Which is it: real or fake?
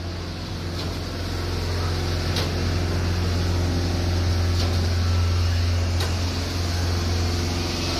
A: real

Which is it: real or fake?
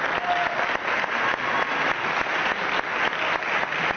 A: real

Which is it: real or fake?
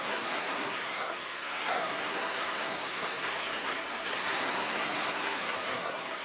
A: fake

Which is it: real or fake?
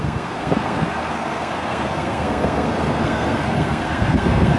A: fake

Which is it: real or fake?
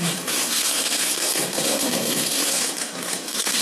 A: fake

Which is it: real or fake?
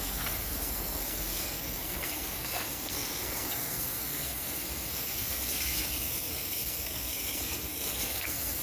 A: fake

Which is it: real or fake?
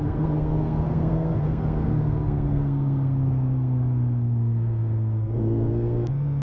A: fake